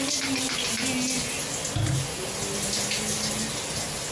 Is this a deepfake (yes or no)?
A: no